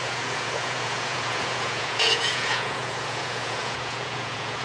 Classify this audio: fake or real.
fake